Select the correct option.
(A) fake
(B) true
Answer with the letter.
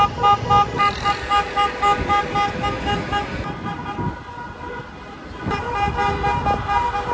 B